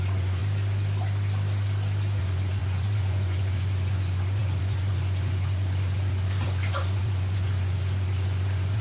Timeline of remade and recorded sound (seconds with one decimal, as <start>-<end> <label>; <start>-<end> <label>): 0.0-0.4 remade; 0.4-2.2 recorded; 2.2-8.8 remade